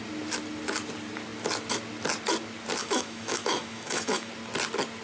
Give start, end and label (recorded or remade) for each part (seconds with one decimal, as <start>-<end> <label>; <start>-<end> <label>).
0.0-2.8 recorded; 2.8-4.3 remade; 4.3-5.0 recorded